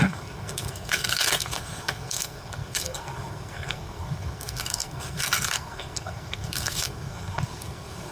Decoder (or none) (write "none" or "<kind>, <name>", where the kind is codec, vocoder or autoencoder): codec, SNAC